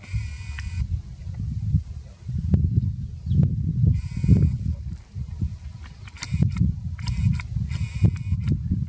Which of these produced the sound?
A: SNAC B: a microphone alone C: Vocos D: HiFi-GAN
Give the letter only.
B